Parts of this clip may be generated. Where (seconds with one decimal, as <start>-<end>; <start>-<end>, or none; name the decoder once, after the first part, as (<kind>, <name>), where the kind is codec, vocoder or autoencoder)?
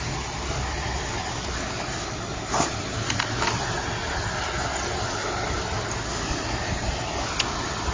none